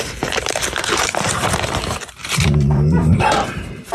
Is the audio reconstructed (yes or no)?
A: yes